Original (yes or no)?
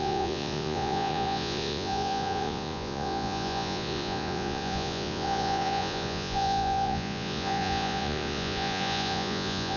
no